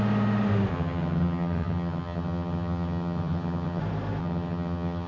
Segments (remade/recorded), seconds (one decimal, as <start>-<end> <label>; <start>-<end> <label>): 0.0-0.7 recorded; 0.7-3.8 remade; 3.8-4.2 recorded; 4.2-5.1 remade